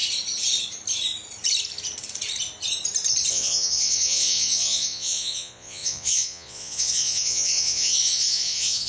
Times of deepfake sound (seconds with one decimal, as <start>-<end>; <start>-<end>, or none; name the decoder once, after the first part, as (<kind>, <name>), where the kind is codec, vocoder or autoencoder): 3.3-8.9 (vocoder, Vocos)

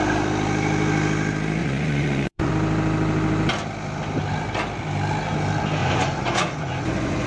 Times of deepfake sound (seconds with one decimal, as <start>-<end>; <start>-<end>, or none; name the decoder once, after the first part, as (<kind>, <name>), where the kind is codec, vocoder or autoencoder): 1.6-2.5 (vocoder, Vocos); 5.8-7.3

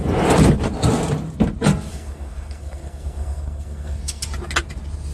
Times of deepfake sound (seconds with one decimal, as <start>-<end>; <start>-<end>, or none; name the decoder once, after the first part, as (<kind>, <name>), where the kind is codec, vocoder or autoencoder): 1.9-4.2 (codec, SNAC)